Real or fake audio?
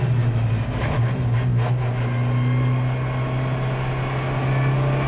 real